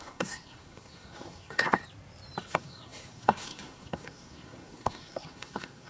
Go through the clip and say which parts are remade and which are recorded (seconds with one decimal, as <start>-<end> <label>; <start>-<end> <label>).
0.0-1.8 remade; 1.8-2.4 recorded; 2.4-5.9 remade